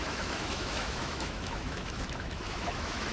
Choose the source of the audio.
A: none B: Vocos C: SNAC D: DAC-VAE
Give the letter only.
D